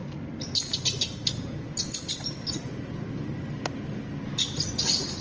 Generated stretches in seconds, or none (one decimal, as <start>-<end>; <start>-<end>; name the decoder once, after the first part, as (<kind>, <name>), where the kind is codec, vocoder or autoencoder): none